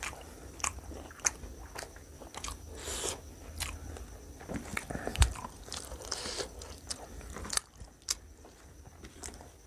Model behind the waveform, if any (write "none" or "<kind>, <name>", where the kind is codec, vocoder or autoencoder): none